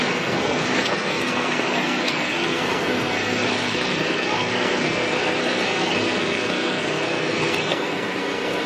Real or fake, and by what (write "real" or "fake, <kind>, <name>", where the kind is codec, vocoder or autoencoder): fake, codec, SNAC